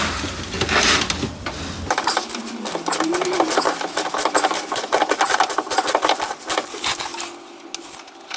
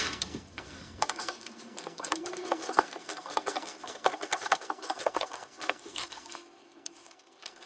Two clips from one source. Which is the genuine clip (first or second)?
first